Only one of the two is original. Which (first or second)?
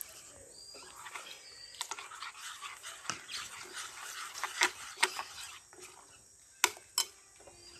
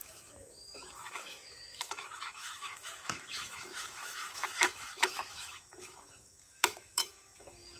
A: first